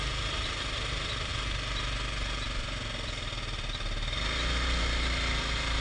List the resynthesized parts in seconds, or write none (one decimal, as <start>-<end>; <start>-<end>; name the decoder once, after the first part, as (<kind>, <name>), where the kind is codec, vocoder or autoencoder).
none